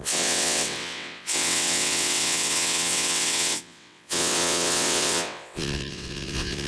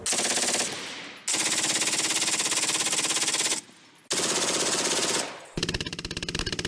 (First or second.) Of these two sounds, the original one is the second